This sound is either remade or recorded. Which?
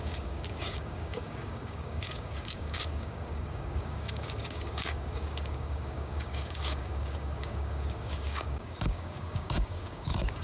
remade